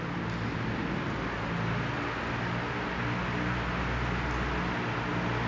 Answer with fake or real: real